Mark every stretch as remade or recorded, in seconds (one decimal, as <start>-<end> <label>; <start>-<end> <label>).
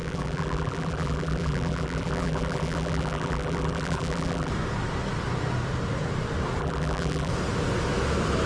0.0-4.5 remade; 4.5-6.6 recorded; 6.6-7.3 remade; 7.3-8.5 recorded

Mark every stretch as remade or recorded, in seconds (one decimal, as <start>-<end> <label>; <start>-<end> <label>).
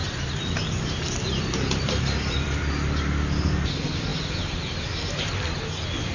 0.0-2.6 remade; 2.6-6.1 recorded